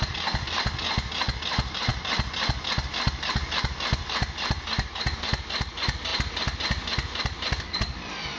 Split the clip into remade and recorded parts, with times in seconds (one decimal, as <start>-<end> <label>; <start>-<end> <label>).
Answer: 0.0-4.0 recorded; 4.0-5.3 remade; 5.3-8.4 recorded